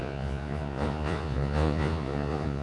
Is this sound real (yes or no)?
no